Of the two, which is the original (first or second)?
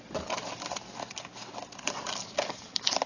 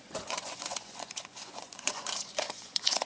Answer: first